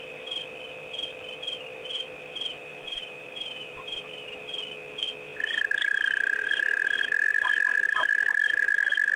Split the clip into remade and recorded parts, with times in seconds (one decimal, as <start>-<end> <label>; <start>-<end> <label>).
0.0-2.7 recorded; 2.7-4.3 remade; 4.3-9.2 recorded